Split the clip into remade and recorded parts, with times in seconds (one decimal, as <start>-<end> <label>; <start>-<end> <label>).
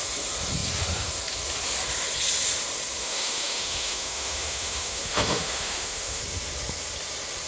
0.0-3.0 recorded; 3.0-6.2 remade; 6.2-7.5 recorded